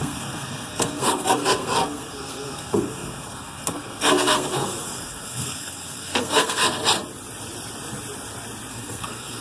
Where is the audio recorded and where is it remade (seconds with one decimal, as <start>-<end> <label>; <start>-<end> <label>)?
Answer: 0.0-6.8 remade; 6.8-8.7 recorded; 8.7-9.4 remade